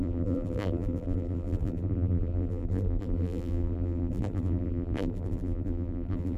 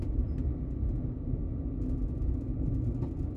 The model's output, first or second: first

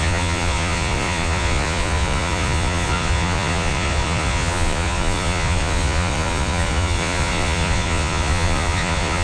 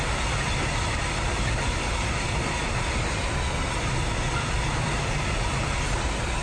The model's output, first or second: first